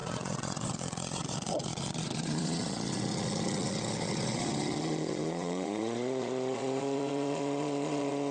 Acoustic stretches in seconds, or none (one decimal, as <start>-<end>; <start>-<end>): none